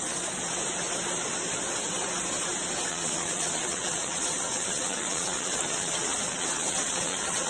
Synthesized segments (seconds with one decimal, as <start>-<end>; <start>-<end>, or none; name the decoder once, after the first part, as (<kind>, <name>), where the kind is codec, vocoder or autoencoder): 2.9-7.5 (vocoder, WaveNeXt)